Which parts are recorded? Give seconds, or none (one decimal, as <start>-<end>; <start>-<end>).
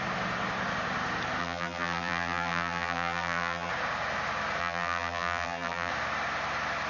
0.0-1.4; 3.7-4.6; 5.9-6.9